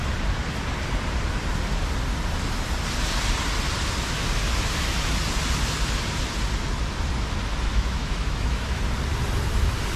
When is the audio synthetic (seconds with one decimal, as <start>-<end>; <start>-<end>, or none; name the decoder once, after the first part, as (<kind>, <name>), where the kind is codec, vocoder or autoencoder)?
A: 7.7-8.8 (autoencoder, DAC-VAE)